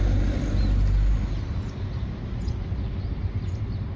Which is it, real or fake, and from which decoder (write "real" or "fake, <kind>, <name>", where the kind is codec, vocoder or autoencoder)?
real